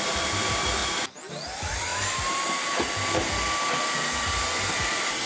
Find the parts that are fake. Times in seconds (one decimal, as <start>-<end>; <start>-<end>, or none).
0.0-0.8; 1.3-1.9; 4.2-5.3